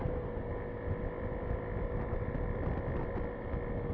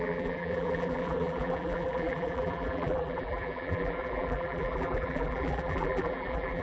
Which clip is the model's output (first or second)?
second